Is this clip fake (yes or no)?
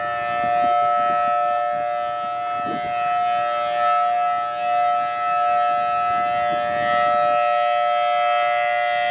no